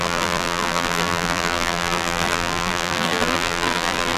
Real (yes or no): no